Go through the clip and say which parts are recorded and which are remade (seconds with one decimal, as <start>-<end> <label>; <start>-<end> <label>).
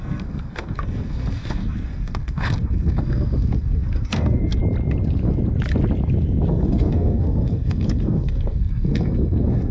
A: 0.0-4.6 remade; 4.6-6.5 recorded; 6.5-9.7 remade